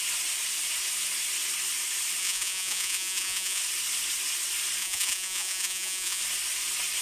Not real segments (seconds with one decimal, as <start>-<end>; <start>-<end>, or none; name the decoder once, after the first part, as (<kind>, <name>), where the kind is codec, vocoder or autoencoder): 2.2-3.6 (vocoder, Vocos); 4.8-6.2